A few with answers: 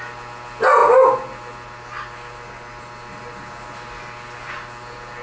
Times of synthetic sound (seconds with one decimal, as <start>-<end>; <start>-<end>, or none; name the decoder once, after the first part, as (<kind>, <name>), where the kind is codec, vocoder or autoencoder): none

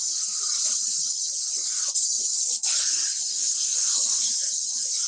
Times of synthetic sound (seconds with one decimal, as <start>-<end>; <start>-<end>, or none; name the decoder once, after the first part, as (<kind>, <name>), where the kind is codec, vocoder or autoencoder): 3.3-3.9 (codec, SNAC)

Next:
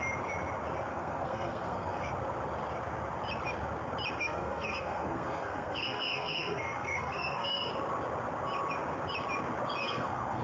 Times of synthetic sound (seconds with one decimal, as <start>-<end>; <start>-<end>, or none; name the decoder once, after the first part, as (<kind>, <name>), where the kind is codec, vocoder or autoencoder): 0.9-2.1 (codec, SNAC); 4.2-7.7; 9.8-10.4

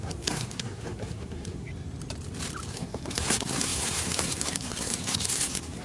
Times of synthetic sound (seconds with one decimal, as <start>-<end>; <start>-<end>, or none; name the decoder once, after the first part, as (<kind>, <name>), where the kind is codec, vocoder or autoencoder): 0.0-1.7 (codec, SNAC); 2.7-5.8

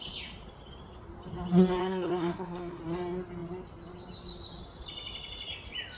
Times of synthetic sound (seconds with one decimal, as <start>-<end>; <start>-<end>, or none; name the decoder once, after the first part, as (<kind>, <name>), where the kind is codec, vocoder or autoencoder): 1.8-2.8 (codec, SNAC)